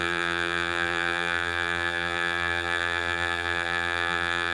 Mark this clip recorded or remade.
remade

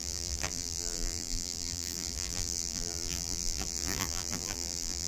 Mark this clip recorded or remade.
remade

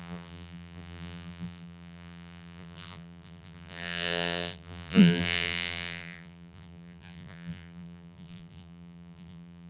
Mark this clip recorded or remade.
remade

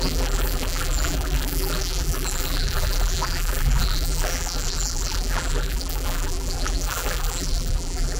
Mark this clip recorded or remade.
remade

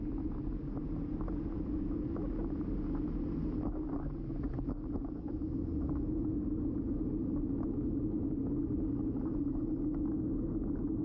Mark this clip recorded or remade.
recorded